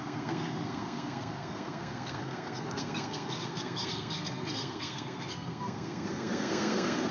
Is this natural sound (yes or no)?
no